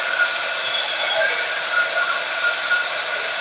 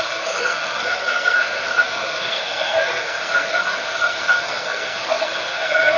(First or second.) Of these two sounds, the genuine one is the first